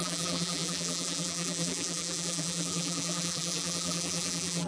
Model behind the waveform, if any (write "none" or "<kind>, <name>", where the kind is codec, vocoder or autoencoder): vocoder, BigVGAN v2